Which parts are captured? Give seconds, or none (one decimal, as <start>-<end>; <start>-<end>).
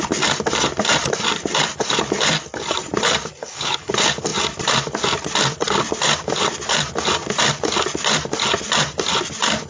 0.0-3.4; 3.9-9.7